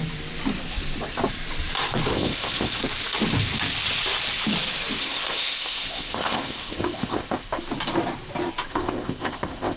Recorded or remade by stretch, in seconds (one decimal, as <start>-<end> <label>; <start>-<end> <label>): 0.0-2.1 recorded; 2.1-2.8 remade; 2.8-5.0 recorded; 5.0-7.6 remade; 7.6-8.7 recorded; 8.7-9.8 remade